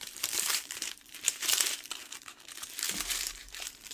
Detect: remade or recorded remade